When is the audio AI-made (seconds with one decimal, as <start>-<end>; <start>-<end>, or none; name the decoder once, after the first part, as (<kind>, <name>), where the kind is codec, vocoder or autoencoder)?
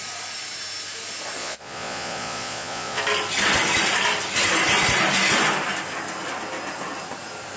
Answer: 1.4-3.0 (vocoder, Vocos)